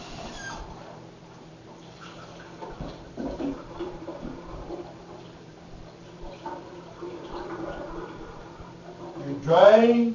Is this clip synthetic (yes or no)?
yes